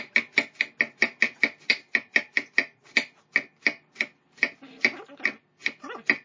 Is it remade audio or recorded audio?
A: recorded